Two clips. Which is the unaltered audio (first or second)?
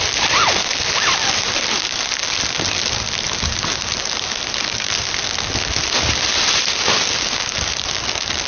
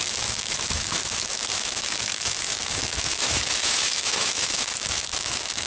first